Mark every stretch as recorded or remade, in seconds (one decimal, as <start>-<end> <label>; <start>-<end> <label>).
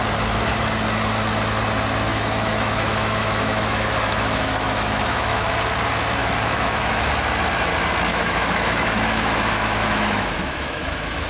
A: 0.0-2.1 recorded; 2.1-5.5 remade; 5.5-6.2 recorded; 6.2-7.1 remade; 7.1-8.1 recorded; 8.1-11.3 remade